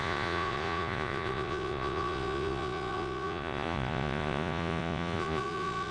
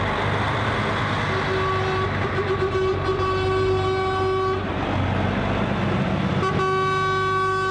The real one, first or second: second